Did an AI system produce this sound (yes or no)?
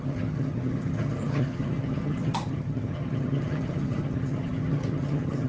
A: yes